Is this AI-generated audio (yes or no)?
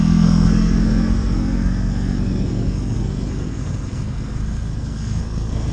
yes